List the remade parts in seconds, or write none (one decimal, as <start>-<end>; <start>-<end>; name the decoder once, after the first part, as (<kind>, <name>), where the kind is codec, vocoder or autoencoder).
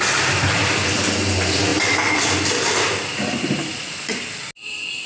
none